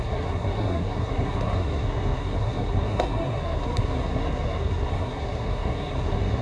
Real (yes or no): no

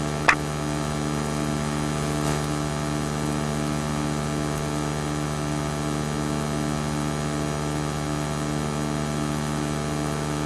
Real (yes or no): yes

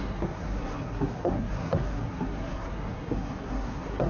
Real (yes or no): no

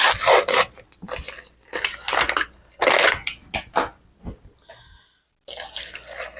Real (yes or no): yes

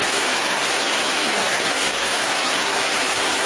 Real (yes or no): no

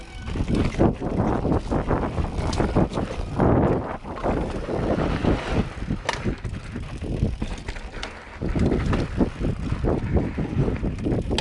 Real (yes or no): yes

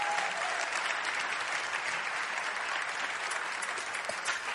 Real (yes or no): yes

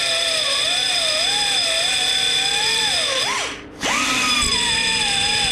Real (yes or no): yes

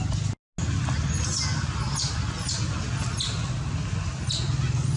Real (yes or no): yes